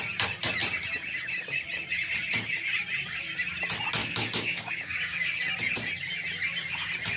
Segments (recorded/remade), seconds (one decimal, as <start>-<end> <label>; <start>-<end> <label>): 0.0-4.0 recorded; 4.0-5.4 remade; 5.4-7.2 recorded